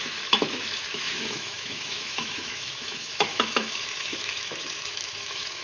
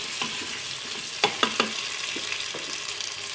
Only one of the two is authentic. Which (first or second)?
second